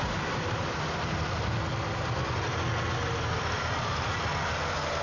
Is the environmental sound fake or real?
real